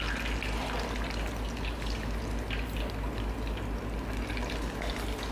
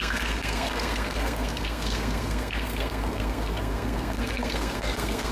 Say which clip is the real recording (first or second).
first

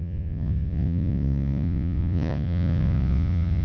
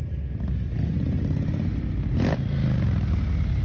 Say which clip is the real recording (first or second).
second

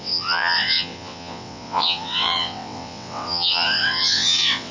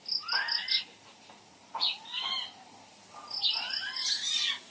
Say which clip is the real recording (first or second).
second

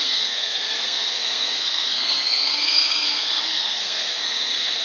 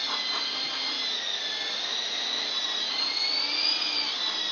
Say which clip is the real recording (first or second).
second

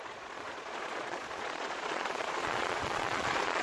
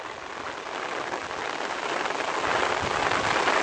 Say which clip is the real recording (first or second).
second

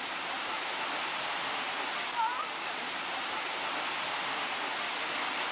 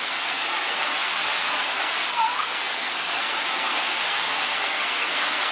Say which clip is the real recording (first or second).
first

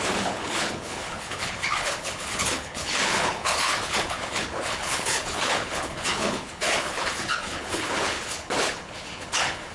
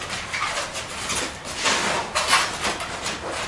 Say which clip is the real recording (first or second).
second